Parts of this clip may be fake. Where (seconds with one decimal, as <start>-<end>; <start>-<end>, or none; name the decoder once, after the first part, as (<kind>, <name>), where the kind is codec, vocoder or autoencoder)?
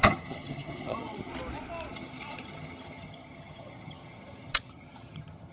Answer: 0.0-1.3 (vocoder, HiFi-GAN); 1.9-5.5